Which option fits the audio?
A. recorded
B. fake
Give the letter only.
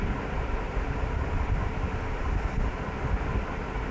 A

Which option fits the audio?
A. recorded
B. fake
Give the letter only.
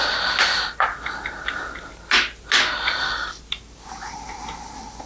A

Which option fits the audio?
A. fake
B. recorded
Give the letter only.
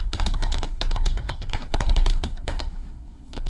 A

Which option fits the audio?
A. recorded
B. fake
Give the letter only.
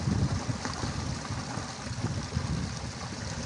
A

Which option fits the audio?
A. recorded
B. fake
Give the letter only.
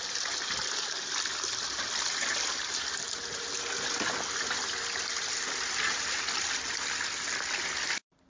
A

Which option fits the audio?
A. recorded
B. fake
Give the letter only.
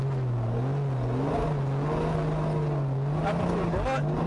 A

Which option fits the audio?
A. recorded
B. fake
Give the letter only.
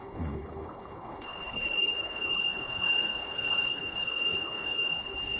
B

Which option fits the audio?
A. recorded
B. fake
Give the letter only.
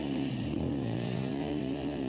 B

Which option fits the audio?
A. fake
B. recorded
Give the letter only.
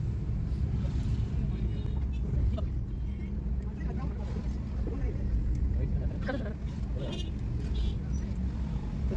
B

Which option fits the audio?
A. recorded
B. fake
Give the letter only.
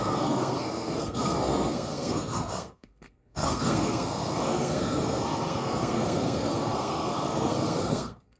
B